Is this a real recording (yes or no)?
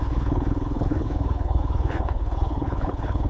no